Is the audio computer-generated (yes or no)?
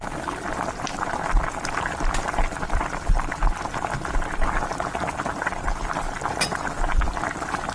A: no